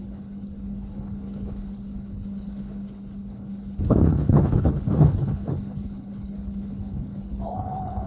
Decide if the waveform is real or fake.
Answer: fake